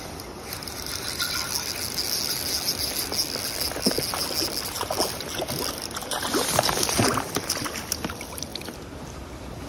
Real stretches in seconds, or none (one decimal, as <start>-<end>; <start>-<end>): 0.0-9.7